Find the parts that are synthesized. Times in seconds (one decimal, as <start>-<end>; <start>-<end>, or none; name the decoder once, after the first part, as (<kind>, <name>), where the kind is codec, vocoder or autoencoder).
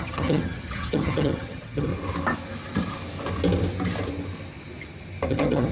0.0-1.9 (vocoder, HiFi-GAN); 5.3-5.7